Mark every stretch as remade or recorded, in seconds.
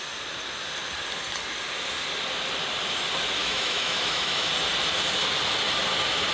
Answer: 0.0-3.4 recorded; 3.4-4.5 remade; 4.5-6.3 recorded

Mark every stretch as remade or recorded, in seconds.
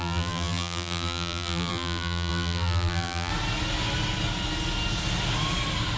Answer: 0.0-3.3 remade; 3.3-6.0 recorded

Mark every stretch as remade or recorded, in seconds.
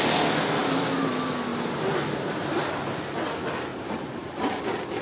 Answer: 0.0-0.6 recorded; 0.6-1.1 remade; 1.1-1.5 recorded; 1.5-2.8 remade; 2.8-3.7 recorded; 3.7-4.6 remade; 4.6-5.0 recorded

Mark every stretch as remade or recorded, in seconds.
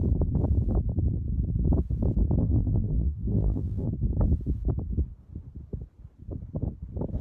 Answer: 0.0-2.4 recorded; 2.4-3.9 remade; 3.9-7.2 recorded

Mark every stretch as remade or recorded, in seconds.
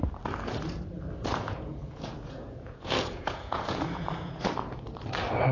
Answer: 0.0-1.2 recorded; 1.2-4.5 remade; 4.5-5.5 recorded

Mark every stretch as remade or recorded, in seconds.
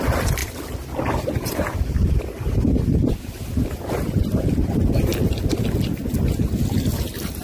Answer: 0.0-7.4 recorded